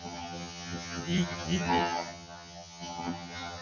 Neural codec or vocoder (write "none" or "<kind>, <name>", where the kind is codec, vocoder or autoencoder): vocoder, HiFi-GAN